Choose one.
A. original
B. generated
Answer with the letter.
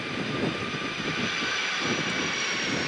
A